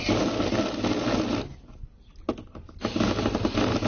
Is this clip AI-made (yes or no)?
no